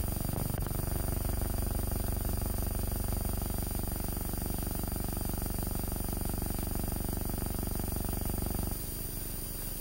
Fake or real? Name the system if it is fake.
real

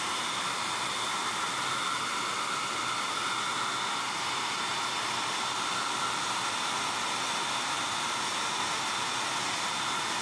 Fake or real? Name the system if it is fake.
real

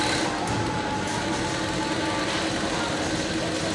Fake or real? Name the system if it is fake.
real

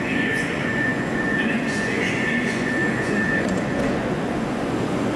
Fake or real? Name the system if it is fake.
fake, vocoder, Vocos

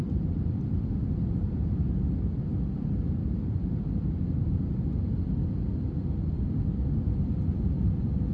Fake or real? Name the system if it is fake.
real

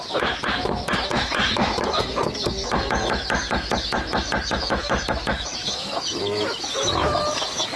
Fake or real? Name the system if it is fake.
fake, autoencoder, DAC-VAE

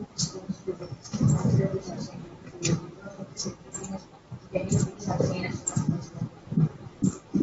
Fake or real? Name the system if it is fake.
real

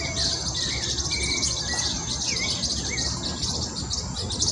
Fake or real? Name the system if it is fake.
real